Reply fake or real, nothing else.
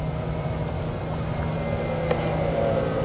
real